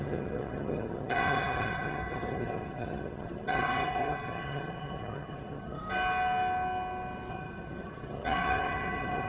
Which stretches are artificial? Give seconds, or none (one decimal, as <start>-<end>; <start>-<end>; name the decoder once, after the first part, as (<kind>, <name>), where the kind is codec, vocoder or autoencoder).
0.0-5.8 (vocoder, HiFi-GAN); 7.3-9.3

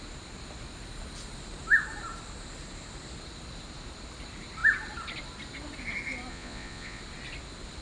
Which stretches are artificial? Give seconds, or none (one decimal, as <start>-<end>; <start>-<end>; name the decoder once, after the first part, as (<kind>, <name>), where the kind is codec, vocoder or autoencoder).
6.3-7.0 (vocoder, Vocos)

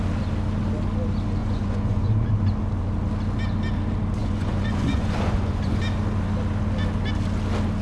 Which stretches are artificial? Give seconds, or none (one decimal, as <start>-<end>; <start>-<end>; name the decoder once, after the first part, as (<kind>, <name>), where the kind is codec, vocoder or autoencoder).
1.4-2.3 (vocoder, Vocos); 4.2-5.8

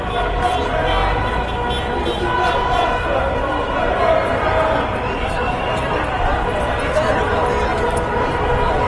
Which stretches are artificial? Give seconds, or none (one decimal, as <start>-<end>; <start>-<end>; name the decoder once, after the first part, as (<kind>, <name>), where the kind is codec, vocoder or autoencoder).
5.4-6.0 (vocoder, BigVGAN v2); 7.7-8.9

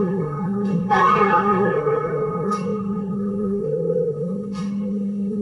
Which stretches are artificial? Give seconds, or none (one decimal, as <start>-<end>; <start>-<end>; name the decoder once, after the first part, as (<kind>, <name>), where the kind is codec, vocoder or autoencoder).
0.0-5.4 (codec, SNAC)

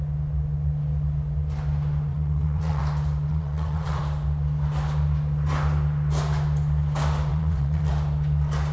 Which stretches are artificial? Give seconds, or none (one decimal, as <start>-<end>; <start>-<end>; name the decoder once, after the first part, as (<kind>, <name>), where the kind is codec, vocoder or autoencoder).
2.1-2.8 (vocoder, WaveNeXt); 3.3-4.0; 7.3-7.9

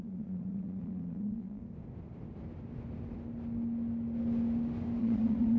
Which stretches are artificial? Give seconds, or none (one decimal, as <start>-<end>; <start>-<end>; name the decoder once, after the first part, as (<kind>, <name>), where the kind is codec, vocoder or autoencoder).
0.0-1.6 (vocoder, Vocos); 5.0-5.6